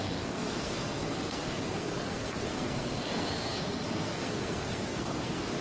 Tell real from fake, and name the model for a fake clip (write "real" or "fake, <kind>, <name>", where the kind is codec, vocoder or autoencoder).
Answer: fake, codec, SNAC